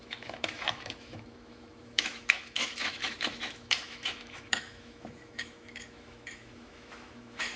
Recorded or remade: remade